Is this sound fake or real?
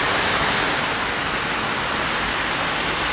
real